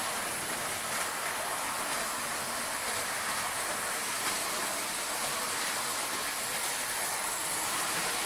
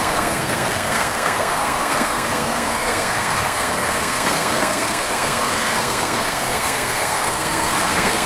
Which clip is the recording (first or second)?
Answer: first